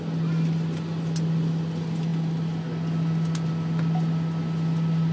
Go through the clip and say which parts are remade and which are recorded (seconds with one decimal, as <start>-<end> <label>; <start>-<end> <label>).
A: 0.0-5.1 recorded